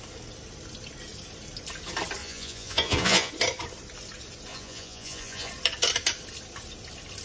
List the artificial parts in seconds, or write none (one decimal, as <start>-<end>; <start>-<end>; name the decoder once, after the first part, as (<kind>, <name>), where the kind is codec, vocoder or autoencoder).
2.2-3.3 (vocoder, Vocos); 4.5-5.5